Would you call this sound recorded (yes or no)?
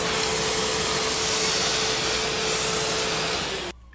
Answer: yes